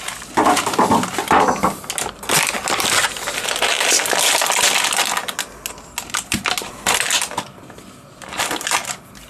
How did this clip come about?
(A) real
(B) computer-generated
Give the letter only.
A